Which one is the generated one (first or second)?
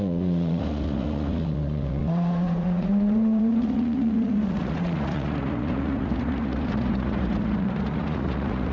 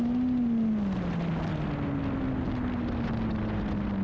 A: first